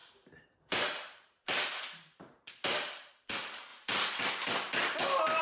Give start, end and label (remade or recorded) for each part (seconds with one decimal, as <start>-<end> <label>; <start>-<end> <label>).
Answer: 0.0-2.5 remade; 2.5-3.7 recorded; 3.7-4.2 remade; 4.2-5.4 recorded